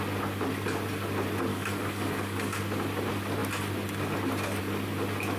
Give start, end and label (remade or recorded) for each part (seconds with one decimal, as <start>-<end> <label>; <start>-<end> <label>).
0.0-1.5 recorded; 1.5-2.6 remade; 2.6-5.4 recorded